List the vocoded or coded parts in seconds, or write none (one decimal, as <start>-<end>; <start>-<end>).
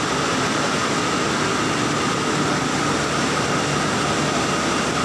none